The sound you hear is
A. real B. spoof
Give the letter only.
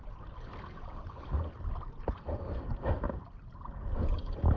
A